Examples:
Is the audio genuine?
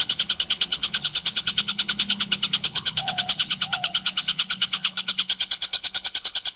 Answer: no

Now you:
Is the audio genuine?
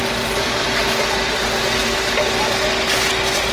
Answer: yes